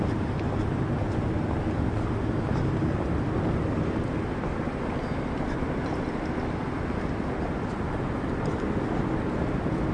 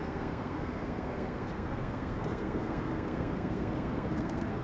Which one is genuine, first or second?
first